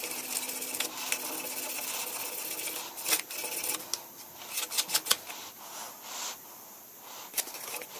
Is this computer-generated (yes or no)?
no